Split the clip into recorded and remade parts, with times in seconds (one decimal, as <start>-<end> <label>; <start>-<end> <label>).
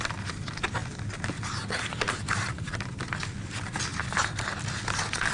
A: 0.0-5.3 recorded